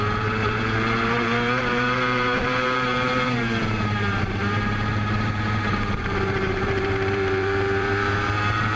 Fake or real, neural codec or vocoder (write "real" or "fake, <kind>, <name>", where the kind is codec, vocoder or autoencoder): fake, vocoder, BigVGAN v2